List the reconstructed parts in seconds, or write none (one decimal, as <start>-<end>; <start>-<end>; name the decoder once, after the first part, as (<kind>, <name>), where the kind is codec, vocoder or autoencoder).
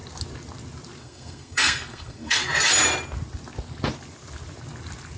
1.0-2.4 (codec, SNAC)